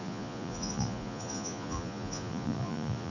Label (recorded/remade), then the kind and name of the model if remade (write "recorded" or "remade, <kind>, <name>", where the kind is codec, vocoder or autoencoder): remade, vocoder, Vocos